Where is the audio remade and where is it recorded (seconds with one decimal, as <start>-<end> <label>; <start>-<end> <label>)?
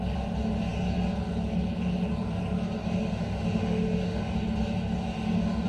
0.0-2.8 recorded; 2.8-4.3 remade; 4.3-5.7 recorded